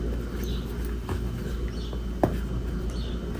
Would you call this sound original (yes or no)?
yes